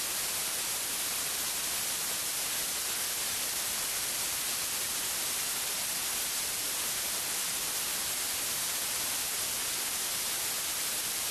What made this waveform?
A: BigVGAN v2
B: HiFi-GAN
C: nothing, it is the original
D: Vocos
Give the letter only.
C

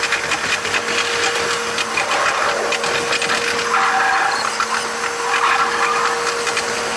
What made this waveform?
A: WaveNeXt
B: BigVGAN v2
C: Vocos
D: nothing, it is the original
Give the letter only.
D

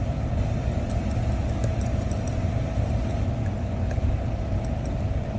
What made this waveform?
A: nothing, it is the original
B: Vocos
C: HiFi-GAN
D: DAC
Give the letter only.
A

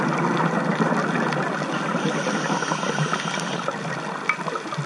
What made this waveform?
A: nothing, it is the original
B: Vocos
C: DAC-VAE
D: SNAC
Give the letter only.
A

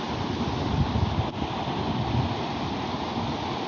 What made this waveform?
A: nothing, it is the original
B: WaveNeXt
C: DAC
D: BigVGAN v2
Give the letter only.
A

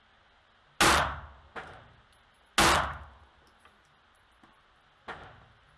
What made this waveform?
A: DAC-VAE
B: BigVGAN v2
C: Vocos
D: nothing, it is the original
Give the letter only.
D